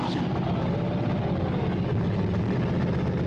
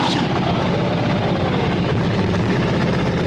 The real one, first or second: first